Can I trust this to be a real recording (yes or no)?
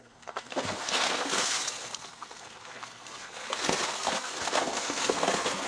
no